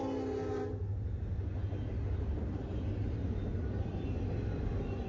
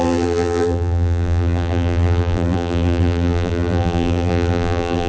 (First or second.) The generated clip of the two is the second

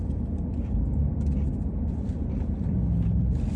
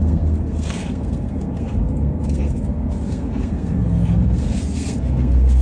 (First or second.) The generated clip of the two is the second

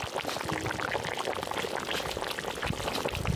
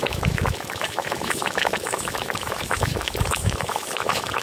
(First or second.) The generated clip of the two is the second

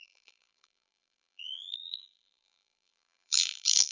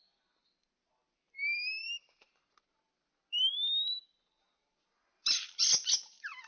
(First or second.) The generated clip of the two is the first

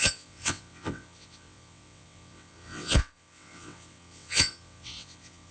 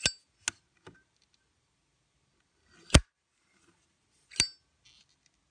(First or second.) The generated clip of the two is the first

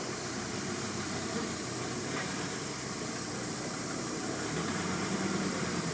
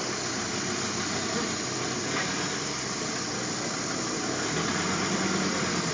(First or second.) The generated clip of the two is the first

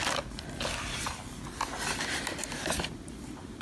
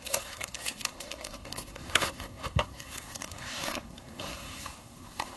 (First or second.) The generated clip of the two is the second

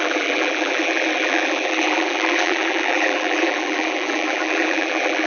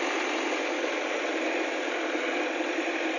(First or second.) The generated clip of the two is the first